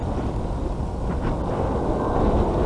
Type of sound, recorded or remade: recorded